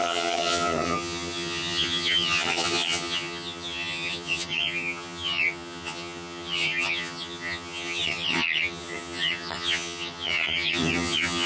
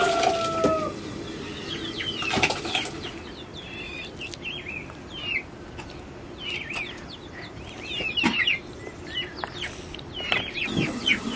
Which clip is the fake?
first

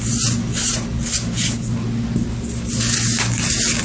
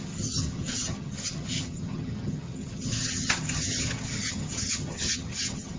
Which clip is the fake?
second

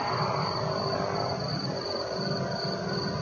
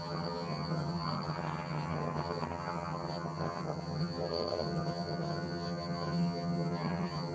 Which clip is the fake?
second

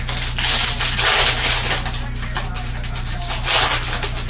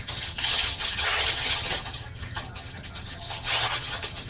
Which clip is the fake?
second